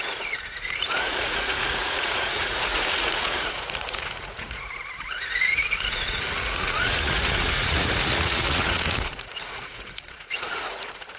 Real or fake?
fake